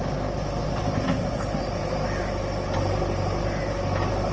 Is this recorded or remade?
recorded